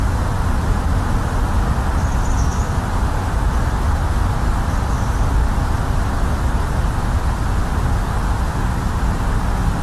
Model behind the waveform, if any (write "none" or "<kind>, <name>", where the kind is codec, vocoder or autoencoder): none